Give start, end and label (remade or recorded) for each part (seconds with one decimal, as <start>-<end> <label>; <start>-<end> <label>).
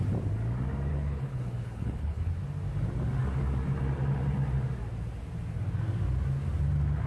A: 0.0-0.9 recorded; 0.9-2.3 remade; 2.3-7.1 recorded